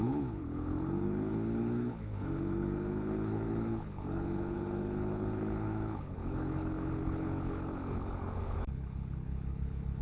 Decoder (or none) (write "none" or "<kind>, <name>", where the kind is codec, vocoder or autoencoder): codec, HILCodec